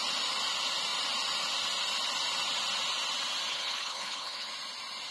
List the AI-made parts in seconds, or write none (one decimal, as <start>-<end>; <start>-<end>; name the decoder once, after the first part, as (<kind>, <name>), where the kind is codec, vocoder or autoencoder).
3.5-4.5 (codec, HILCodec)